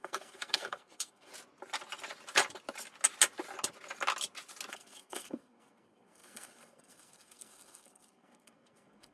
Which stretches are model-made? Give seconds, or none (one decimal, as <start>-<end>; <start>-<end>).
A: 0.0-1.3; 4.7-9.1